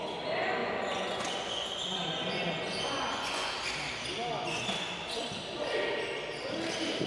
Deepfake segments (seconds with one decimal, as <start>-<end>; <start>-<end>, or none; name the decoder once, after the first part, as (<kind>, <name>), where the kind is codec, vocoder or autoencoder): 0.6-3.5 (vocoder, Vocos)